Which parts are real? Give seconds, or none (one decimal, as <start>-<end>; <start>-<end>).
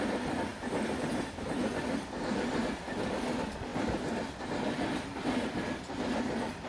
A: 0.0-6.7